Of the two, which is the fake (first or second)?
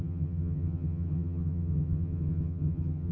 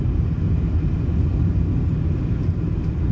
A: first